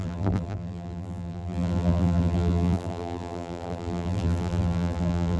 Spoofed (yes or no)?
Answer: yes